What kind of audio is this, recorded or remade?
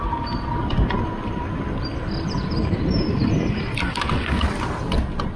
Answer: recorded